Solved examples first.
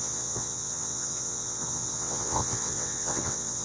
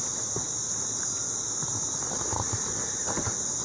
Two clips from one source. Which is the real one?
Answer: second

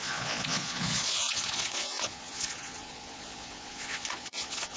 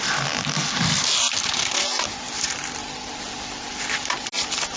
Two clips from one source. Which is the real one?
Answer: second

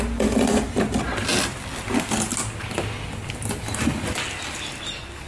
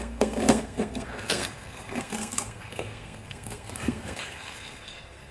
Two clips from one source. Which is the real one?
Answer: first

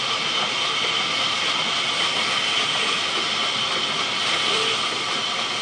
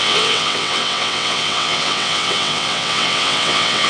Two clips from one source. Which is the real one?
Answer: first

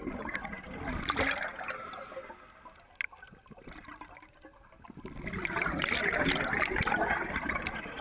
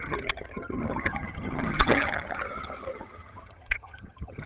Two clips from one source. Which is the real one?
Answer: first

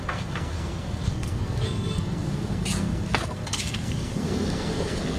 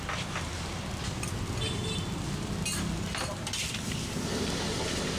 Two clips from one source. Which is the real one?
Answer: second